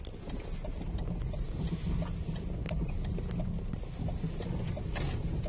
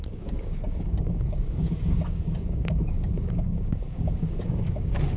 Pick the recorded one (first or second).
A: first